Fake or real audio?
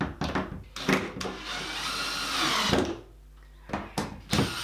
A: real